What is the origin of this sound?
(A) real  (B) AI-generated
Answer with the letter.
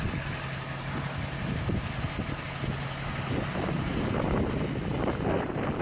A